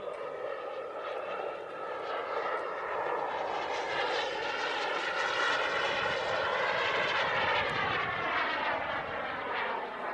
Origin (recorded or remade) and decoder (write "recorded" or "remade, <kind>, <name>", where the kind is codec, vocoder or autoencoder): recorded